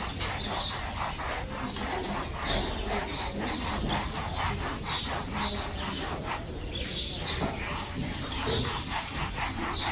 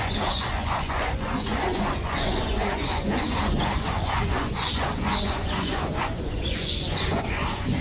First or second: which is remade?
second